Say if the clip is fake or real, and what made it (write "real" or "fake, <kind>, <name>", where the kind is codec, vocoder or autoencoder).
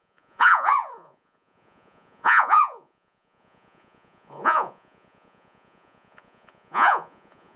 fake, vocoder, Vocos